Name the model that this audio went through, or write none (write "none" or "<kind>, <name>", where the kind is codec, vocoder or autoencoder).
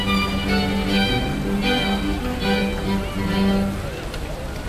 none